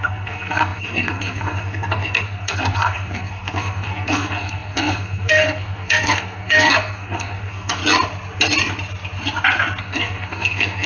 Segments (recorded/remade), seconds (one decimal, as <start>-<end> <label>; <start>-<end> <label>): 0.0-7.8 remade; 7.8-9.8 recorded; 9.8-10.9 remade